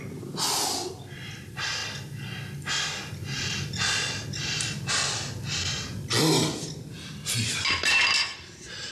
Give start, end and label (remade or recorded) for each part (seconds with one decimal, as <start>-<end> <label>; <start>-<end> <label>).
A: 0.0-1.8 remade; 1.8-4.9 recorded; 4.9-8.9 remade